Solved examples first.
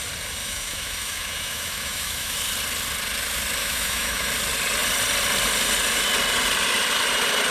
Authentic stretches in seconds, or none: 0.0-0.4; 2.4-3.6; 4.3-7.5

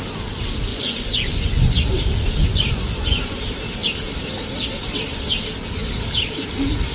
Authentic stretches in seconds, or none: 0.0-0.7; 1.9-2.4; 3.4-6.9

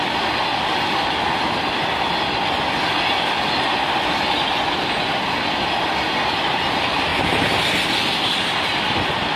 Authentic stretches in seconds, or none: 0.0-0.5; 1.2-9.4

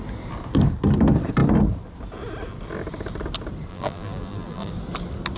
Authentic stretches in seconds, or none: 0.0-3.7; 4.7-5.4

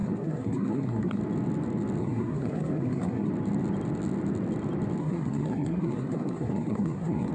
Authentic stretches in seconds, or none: 1.2-2.0; 3.3-5.0

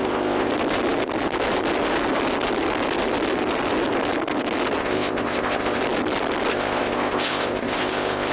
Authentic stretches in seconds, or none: 0.5-4.8; 5.8-6.5

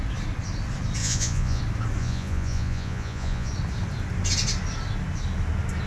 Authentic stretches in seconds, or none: 0.0-1.0; 1.6-2.0; 3.5-5.9